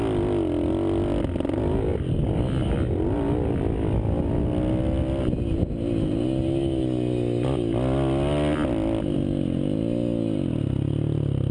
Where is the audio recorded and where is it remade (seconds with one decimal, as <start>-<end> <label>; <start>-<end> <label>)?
0.0-11.5 recorded